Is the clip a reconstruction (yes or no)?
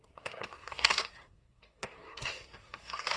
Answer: yes